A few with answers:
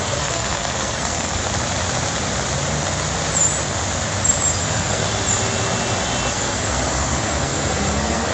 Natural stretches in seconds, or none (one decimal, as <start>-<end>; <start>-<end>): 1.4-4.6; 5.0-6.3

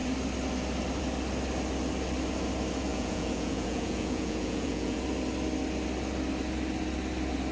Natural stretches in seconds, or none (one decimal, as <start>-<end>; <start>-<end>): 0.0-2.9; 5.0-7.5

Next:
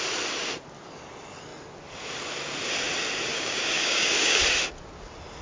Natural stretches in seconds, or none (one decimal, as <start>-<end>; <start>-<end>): 0.0-3.3; 4.4-5.4

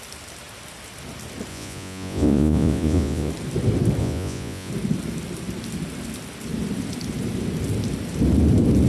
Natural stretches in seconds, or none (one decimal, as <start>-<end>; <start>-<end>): 0.0-1.5; 3.3-4.0; 4.7-8.9

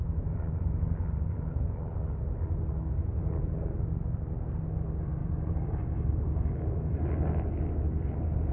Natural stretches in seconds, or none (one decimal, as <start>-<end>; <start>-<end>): 0.0-5.2; 6.1-8.5

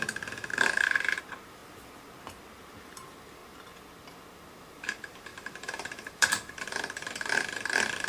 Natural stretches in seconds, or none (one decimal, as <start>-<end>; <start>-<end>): 1.6-2.8; 3.4-4.5

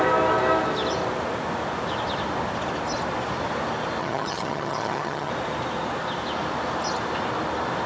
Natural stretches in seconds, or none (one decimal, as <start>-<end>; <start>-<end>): 0.0-4.0; 5.3-7.9